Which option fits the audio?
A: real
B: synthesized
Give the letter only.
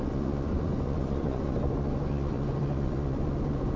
B